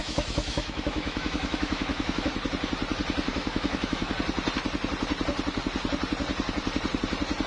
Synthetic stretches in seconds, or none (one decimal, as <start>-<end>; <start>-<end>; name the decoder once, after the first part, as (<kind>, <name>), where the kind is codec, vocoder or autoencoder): 0.0-2.3 (autoencoder, DAC-VAE); 3.3-4.1